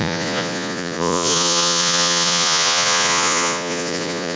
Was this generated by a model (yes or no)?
yes